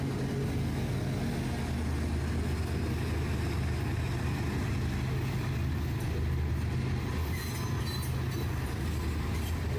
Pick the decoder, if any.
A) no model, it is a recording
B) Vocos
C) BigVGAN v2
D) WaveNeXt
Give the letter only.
A